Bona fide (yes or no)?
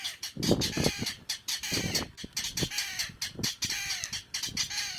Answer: yes